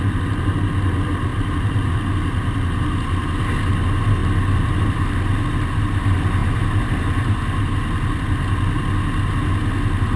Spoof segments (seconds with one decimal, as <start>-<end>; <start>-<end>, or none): 1.3-1.9; 6.4-6.9